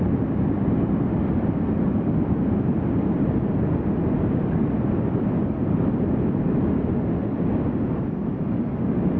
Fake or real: real